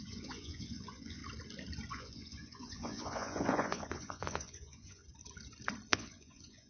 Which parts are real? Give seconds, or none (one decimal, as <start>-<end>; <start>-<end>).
1.2-1.9; 5.0-5.9